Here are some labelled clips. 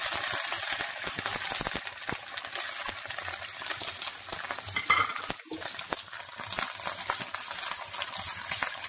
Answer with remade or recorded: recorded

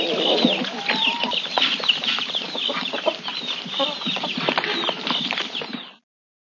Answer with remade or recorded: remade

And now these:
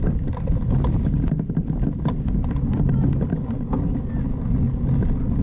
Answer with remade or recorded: recorded